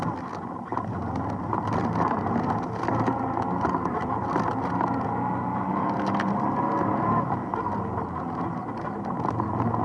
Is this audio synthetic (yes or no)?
no